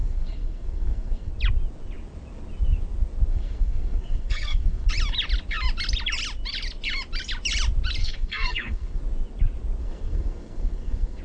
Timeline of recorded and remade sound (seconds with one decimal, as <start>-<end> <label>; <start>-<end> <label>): 0.0-1.3 remade; 1.3-3.3 recorded; 3.3-4.9 remade; 4.9-8.0 recorded; 8.0-9.0 remade; 9.0-9.8 recorded; 9.8-11.2 remade